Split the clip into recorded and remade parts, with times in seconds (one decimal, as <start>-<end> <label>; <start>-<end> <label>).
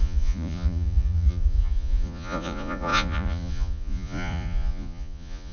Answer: 0.0-5.5 remade